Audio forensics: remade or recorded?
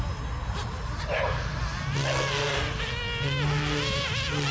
recorded